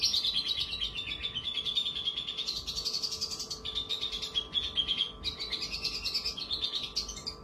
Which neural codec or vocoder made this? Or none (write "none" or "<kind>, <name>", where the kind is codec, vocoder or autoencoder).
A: none